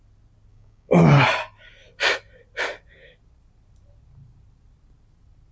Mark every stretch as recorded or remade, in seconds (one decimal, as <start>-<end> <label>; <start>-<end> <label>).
0.0-0.5 recorded; 0.5-1.0 remade; 1.0-5.5 recorded

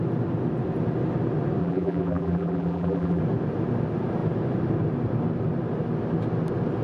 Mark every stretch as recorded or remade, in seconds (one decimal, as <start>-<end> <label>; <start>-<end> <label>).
0.0-1.6 recorded; 1.6-3.2 remade; 3.2-6.8 recorded

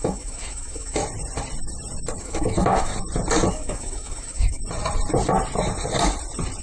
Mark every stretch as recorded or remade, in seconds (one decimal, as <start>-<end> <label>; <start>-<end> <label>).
0.0-1.0 remade; 1.0-2.2 recorded; 2.2-2.9 remade; 2.9-3.5 recorded; 3.5-4.6 remade; 4.6-6.6 recorded

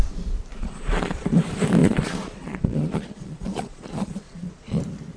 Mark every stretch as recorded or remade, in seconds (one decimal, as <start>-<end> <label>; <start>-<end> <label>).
0.0-0.6 recorded; 0.6-1.4 remade; 1.4-1.8 recorded; 1.8-4.8 remade; 4.8-5.2 recorded

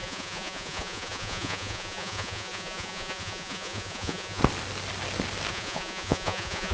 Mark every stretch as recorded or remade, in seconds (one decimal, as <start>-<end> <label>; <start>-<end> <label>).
0.0-4.4 remade; 4.4-5.5 recorded; 5.5-6.7 remade

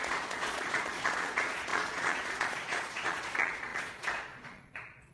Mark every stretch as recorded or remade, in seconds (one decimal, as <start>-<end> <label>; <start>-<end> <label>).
0.0-5.1 remade

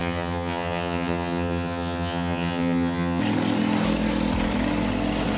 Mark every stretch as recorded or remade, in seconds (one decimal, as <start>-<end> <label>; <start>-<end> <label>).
0.0-3.2 remade; 3.2-5.4 recorded